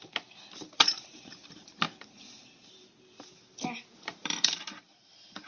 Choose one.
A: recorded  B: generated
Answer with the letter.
B